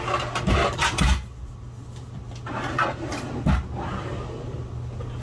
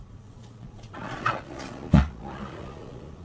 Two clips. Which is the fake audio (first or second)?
second